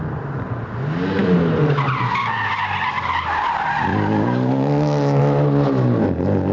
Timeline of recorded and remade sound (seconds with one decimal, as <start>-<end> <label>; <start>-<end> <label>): 0.0-3.9 recorded; 3.9-5.2 remade; 5.2-6.5 recorded